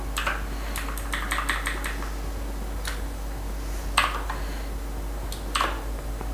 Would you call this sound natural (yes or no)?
yes